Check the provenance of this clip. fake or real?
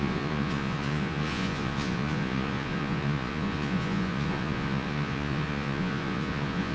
fake